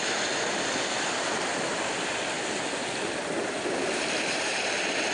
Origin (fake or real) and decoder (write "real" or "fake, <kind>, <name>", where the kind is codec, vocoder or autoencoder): real